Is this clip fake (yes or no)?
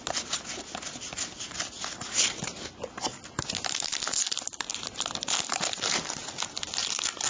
no